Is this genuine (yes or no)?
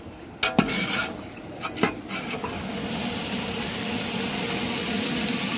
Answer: yes